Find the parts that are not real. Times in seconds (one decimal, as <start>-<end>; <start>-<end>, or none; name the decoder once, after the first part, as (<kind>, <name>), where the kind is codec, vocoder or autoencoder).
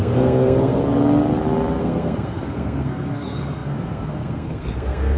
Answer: 0.0-0.8 (codec, SNAC); 1.8-5.2